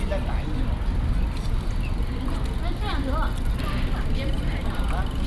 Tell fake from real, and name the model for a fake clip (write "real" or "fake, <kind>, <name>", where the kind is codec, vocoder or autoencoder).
real